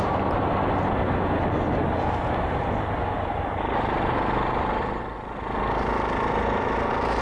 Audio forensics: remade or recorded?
recorded